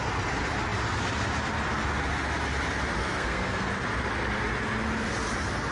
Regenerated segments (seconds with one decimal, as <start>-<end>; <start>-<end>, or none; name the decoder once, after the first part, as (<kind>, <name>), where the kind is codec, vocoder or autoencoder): 3.0-3.7 (codec, SNAC)